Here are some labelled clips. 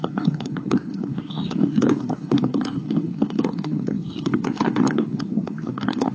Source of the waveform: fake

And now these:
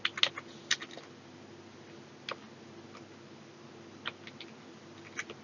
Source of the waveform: real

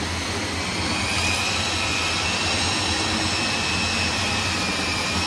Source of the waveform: real